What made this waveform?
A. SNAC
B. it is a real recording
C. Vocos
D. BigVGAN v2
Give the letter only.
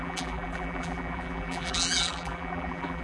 D